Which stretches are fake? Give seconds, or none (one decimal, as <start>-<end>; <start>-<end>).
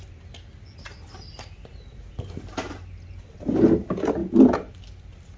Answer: none